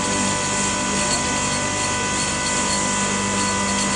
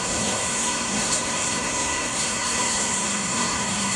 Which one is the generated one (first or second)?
second